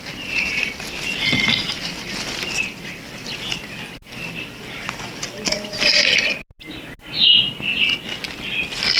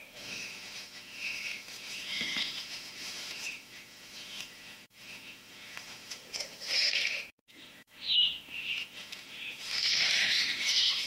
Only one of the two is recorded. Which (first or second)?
first